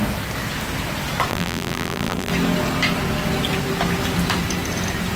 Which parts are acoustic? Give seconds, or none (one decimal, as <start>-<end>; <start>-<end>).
0.0-1.3; 2.3-5.2

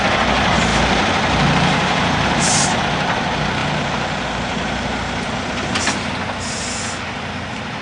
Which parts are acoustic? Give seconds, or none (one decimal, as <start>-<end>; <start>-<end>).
0.0-0.7; 2.8-3.6; 5.9-7.8

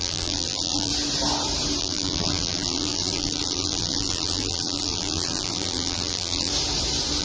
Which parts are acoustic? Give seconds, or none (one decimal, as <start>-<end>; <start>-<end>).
0.9-1.8; 6.5-7.2

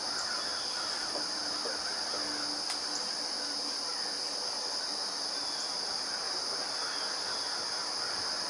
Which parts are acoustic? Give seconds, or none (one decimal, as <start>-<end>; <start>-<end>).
0.0-8.5

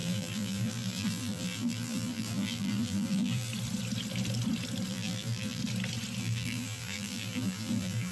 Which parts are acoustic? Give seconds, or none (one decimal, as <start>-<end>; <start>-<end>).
3.5-4.9; 5.6-6.2